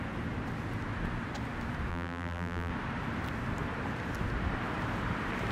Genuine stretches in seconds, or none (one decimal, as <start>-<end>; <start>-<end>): 0.0-1.9; 2.7-5.5